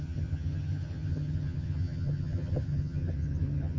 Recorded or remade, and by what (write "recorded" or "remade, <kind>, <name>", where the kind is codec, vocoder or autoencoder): remade, vocoder, HiFi-GAN